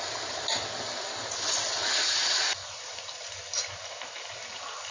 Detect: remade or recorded recorded